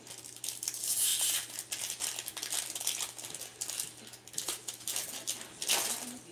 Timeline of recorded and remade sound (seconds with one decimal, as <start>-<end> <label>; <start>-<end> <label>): 0.0-6.3 recorded